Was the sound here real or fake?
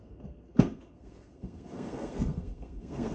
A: fake